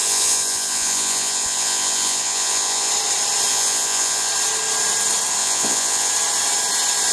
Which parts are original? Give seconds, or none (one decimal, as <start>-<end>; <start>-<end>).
2.9-3.5; 4.3-5.4; 6.1-7.1